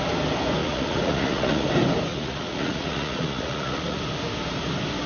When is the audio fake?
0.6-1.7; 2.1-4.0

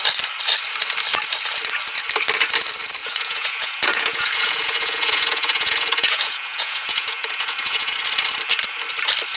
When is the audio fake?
3.0-7.9

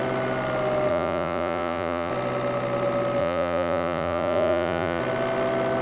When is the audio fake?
0.9-2.1; 3.2-5.0

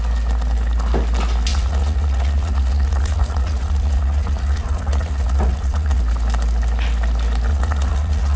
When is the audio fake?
1.5-6.0; 7.5-8.4